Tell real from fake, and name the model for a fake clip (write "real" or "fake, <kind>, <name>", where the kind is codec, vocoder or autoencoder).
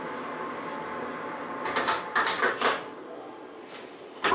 real